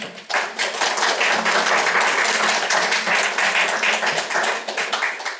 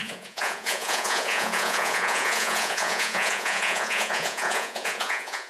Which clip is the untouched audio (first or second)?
first